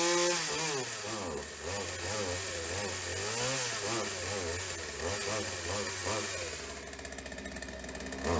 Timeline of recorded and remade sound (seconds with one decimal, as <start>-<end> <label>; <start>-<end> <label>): 0.0-8.4 recorded